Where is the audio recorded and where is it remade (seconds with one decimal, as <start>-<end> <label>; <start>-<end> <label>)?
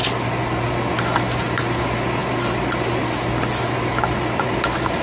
0.0-5.0 recorded